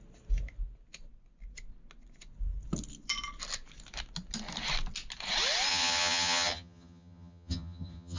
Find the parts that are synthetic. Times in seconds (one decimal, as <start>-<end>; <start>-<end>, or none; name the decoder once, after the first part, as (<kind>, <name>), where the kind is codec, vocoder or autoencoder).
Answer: 5.7-8.2 (vocoder, HiFi-GAN)